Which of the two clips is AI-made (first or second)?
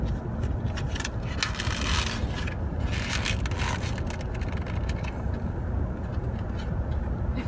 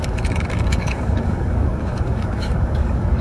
second